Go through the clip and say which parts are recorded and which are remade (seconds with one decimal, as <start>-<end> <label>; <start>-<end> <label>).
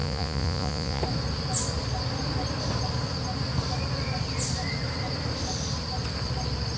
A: 0.0-1.0 remade; 1.0-6.8 recorded